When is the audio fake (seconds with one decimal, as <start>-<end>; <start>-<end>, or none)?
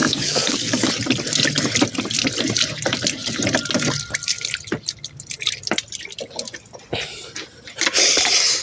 0.0-0.9